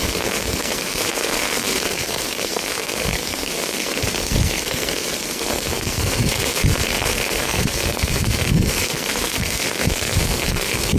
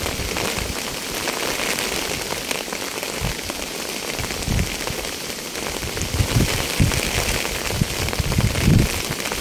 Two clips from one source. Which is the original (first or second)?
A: second